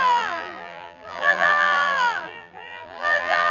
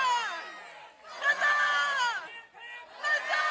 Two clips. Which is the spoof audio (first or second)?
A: first